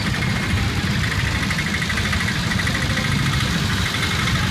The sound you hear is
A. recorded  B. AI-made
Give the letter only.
A